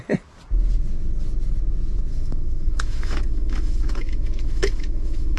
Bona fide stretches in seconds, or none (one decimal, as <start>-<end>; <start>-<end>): 0.0-2.1